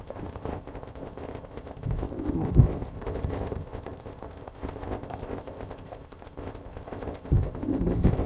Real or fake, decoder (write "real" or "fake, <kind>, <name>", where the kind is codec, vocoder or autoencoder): fake, codec, ZipCodec